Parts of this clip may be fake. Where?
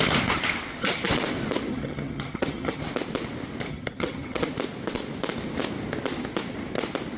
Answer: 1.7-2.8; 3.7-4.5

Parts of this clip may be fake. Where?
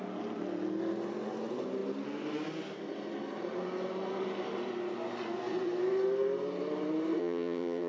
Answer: 7.2-7.9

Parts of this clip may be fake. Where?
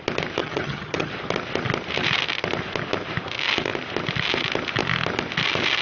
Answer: 0.4-1.1